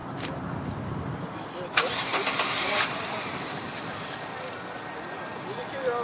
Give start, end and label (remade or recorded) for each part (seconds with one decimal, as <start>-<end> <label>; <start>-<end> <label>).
0.0-3.6 remade; 3.6-6.0 recorded